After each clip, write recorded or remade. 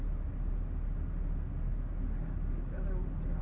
recorded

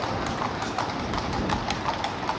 recorded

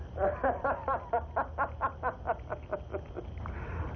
recorded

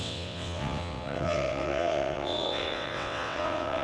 remade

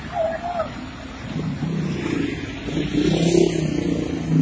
recorded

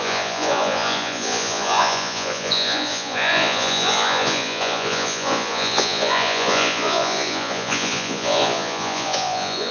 remade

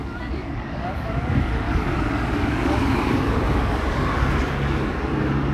remade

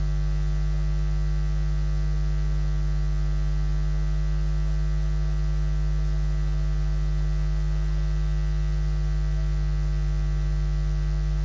recorded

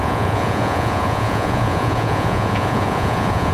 remade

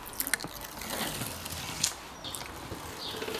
recorded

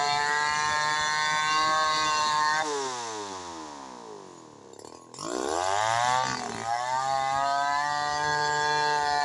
recorded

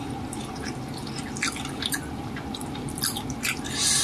remade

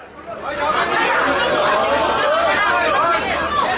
recorded